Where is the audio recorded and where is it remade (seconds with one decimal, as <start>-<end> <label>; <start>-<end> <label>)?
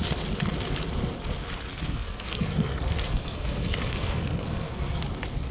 0.0-1.7 recorded; 1.7-5.0 remade; 5.0-5.5 recorded